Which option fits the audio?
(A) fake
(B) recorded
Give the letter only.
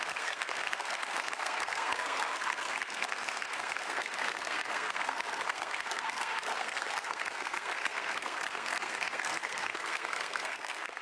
A